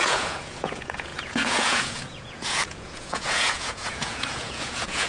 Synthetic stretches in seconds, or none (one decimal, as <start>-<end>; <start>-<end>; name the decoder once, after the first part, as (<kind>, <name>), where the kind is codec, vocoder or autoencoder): 0.0-5.1 (vocoder, Vocos)